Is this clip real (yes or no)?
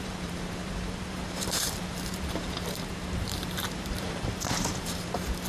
no